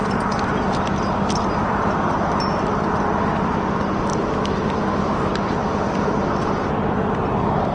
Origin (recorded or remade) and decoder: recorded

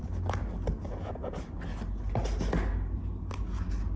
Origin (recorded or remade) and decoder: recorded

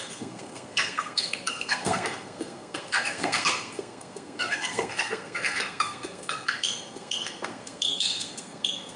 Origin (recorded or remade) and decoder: remade, codec, SNAC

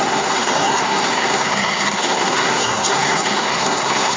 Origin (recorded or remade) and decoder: remade, codec, SNAC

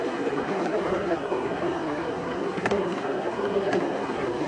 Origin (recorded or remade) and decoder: remade, codec, SNAC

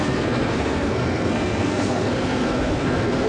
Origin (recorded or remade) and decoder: remade, codec, SNAC